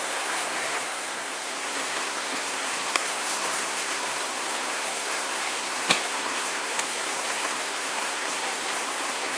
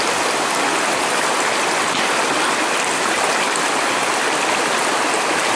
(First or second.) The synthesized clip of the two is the first